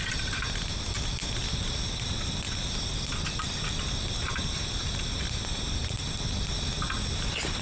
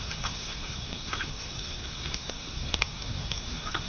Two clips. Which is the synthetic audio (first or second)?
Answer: second